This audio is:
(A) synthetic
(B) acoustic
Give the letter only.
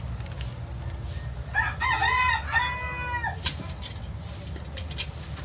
B